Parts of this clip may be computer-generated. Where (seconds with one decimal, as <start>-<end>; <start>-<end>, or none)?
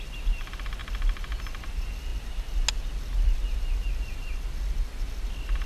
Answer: none